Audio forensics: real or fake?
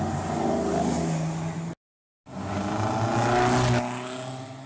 real